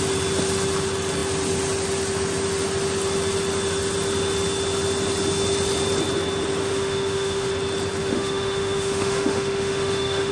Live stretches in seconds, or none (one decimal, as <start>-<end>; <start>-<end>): 0.0-6.6; 7.5-8.0